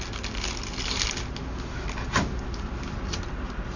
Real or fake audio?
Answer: real